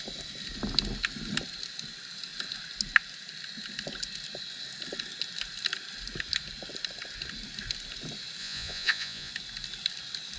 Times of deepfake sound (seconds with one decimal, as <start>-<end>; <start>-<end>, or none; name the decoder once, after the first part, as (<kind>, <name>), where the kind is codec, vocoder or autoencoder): 8.4-9.3 (vocoder, Vocos)